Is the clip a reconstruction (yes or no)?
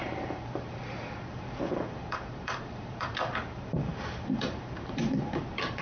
yes